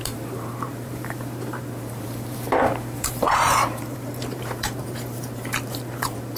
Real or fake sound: fake